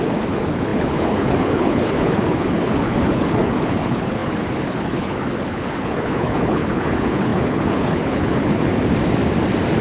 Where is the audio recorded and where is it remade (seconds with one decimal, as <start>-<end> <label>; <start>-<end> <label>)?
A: 0.0-8.7 remade; 8.7-9.8 recorded